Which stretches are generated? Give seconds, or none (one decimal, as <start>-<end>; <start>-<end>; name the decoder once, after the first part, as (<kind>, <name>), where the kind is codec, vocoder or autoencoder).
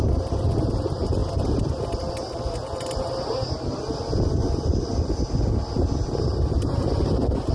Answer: none